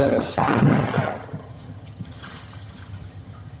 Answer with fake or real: fake